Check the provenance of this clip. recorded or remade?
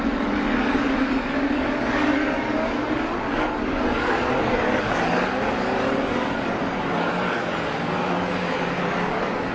remade